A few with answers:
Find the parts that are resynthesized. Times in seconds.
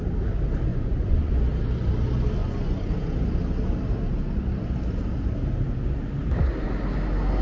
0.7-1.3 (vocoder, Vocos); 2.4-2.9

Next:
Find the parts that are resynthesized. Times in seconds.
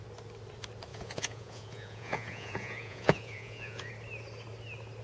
0.9-3.9 (vocoder, Vocos)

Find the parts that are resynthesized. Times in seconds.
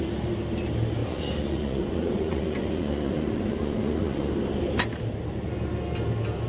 1.0-4.3 (vocoder, Vocos)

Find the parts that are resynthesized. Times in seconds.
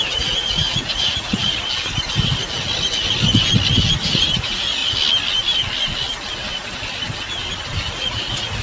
0.0-1.4 (vocoder, Vocos); 4.0-4.8; 7.9-8.6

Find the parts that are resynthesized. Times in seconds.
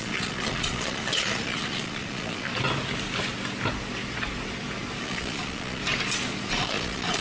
0.0-2.5 (vocoder, Vocos); 5.0-5.8; 6.5-7.2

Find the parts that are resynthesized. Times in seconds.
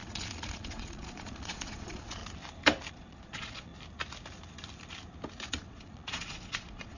0.0-2.2 (vocoder, Vocos); 2.9-3.7; 5.5-7.0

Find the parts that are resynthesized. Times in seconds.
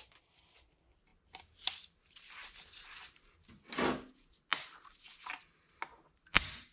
none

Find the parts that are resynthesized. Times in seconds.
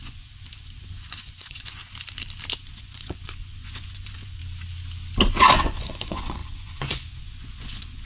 0.0-1.8 (vocoder, Vocos); 2.7-4.4; 5.4-8.1